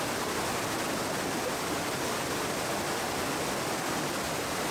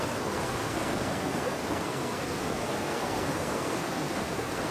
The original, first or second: first